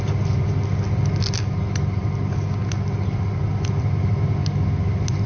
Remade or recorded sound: recorded